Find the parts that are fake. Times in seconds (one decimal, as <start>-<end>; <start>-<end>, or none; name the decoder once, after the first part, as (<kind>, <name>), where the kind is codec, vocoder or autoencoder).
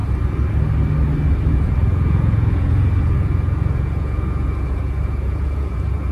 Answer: 1.5-6.1 (vocoder, Vocos)